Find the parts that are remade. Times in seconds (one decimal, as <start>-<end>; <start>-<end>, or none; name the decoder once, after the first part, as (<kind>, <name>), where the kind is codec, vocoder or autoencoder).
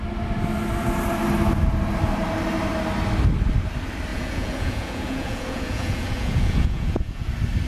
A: 4.1-7.3 (vocoder, Vocos)